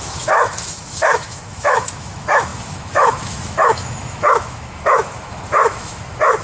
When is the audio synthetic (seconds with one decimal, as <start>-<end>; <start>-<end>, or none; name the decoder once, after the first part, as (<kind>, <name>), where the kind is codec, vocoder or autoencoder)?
0.0-6.4 (autoencoder, DAC-VAE)